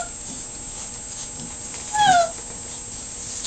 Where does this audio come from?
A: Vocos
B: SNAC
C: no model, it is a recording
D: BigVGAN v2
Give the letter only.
C